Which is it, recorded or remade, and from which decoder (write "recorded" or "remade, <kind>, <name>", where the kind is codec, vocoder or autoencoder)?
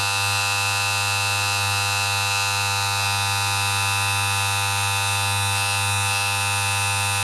recorded